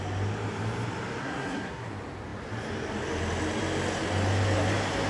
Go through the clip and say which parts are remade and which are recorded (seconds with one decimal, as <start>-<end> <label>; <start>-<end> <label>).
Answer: 0.0-1.2 recorded; 1.2-1.9 remade; 1.9-5.1 recorded